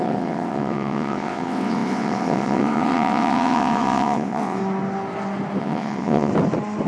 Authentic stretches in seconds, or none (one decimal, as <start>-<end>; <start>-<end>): 4.6-5.6; 6.3-6.9